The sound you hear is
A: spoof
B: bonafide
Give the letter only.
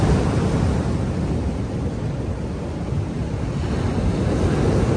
B